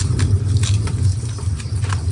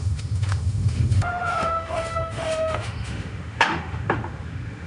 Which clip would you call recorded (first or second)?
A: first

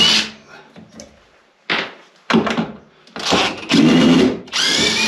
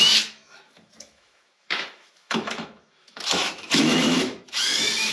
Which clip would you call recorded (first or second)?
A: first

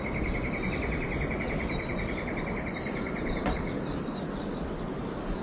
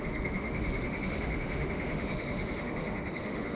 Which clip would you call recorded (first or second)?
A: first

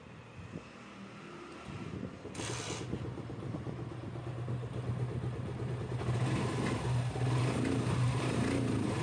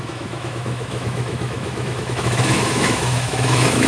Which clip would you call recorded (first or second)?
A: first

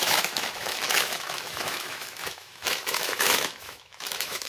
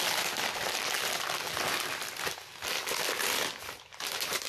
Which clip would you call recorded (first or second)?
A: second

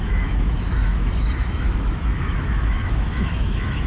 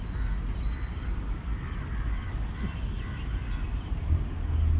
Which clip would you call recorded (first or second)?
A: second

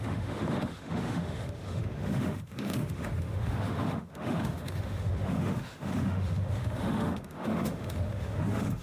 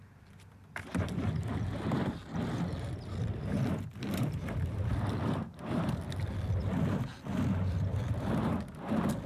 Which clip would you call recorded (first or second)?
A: second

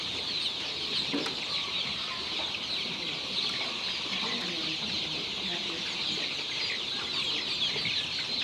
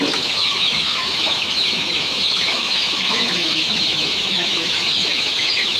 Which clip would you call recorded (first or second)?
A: first